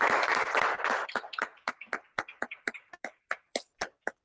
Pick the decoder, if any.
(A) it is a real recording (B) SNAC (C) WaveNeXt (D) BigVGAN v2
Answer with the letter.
D